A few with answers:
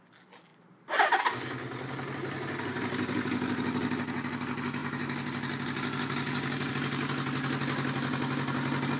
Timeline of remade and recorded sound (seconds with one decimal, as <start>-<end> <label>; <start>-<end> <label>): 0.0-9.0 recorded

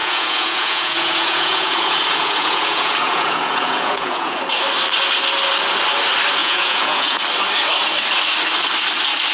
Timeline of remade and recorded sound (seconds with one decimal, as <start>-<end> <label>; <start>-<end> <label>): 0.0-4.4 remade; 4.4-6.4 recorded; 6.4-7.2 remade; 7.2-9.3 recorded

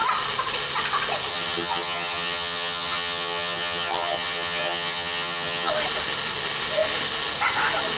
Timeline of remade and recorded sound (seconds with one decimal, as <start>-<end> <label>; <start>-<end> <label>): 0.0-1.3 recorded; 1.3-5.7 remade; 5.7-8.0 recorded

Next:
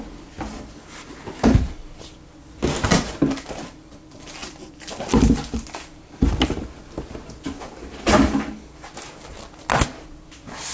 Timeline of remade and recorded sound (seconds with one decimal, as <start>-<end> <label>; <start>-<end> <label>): 0.0-10.7 recorded